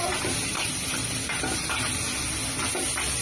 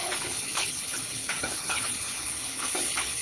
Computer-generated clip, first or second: second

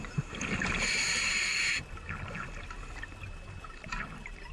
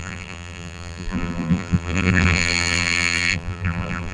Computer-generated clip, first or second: second